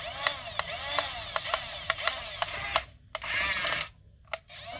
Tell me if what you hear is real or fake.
real